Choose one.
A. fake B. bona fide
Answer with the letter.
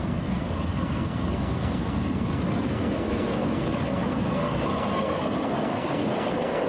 A